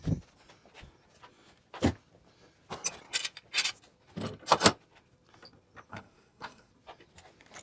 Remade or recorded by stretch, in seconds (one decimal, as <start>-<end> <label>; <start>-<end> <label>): 0.0-5.9 recorded; 5.9-6.7 remade; 6.7-7.6 recorded